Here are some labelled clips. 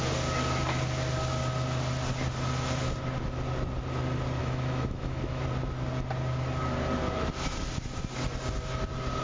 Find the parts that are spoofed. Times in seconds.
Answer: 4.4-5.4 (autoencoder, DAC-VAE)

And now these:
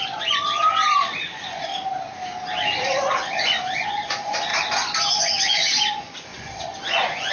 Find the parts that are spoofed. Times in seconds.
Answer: 0.0-1.7 (vocoder, Vocos); 3.1-4.5; 5.2-7.3

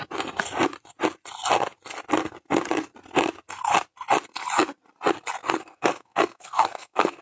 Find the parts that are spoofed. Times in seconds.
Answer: 5.4-7.2 (codec, SNAC)

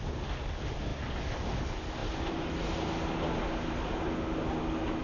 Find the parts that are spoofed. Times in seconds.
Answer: none

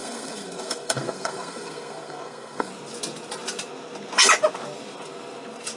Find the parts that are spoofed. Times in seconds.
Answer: 0.0-2.7 (codec, SNAC)

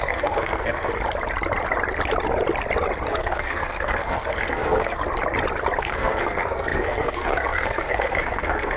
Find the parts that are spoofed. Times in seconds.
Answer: 0.0-0.9 (codec, SNAC); 3.1-5.0; 5.8-8.8

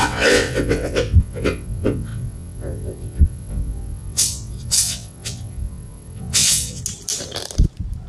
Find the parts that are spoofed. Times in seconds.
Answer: 0.0-6.8 (vocoder, WaveNeXt)

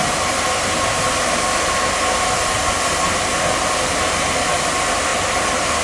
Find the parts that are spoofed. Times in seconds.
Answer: none